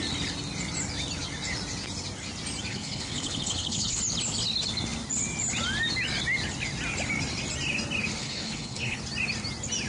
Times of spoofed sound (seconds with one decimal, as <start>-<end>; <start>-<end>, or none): 2.7-4.0; 8.2-9.0